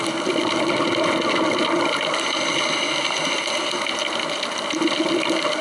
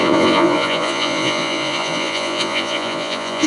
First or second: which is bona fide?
first